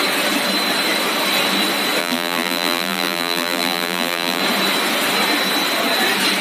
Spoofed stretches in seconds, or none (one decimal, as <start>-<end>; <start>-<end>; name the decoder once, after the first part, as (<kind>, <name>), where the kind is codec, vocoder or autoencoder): 2.0-4.4 (vocoder, BigVGAN v2)